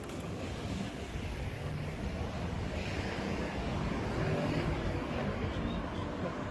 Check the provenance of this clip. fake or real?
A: fake